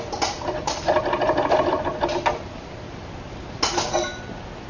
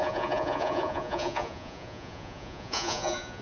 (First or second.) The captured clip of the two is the first